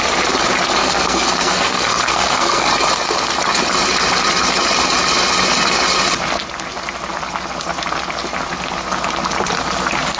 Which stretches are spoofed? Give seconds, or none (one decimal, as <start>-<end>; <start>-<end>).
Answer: 0.8-2.7